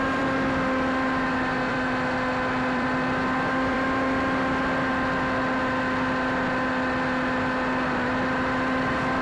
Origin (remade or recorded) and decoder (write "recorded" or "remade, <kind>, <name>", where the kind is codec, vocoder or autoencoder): remade, vocoder, BigVGAN v2